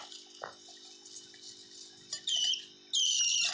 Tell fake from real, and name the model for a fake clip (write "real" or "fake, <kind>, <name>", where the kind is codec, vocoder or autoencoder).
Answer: real